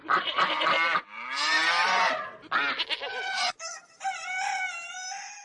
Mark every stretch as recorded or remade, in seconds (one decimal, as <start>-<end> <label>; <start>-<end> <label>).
0.0-1.0 remade; 1.0-5.4 recorded